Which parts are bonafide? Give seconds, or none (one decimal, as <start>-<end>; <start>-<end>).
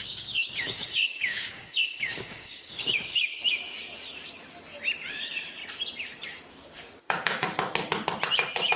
3.4-5.1; 5.6-6.5; 7.5-8.8